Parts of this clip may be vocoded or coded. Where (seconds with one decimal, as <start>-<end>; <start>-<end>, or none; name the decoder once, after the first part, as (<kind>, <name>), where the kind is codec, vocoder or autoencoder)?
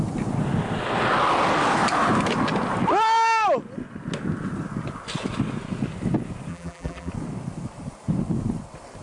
6.5-7.1 (vocoder, BigVGAN v2)